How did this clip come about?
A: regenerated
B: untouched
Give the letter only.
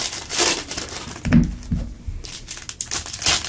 B